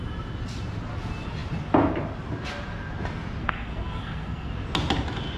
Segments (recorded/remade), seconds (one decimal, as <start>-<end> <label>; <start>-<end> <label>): 0.0-3.4 recorded; 3.4-4.5 remade; 4.5-5.4 recorded

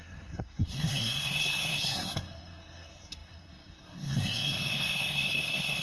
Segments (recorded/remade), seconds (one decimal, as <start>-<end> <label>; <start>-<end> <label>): 0.0-5.8 remade

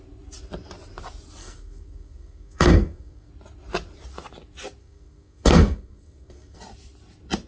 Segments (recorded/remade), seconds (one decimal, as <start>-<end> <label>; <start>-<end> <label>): 0.0-1.4 recorded; 1.4-3.3 remade; 3.3-4.8 recorded; 4.8-6.6 remade; 6.6-7.5 recorded

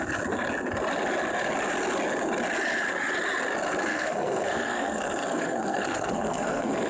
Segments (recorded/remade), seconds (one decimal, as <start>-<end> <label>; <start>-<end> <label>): 0.0-3.9 recorded; 3.9-6.9 remade

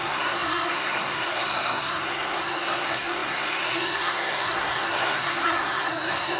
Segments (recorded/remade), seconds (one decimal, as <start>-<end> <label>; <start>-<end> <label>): 0.0-6.4 remade

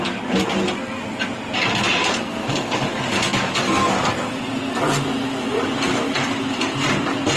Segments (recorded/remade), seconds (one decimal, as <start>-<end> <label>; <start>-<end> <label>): 0.0-2.1 recorded; 2.1-2.8 remade; 2.8-7.4 recorded

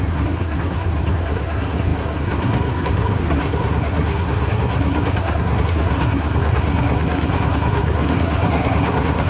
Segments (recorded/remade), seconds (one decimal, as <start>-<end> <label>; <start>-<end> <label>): 0.0-9.3 remade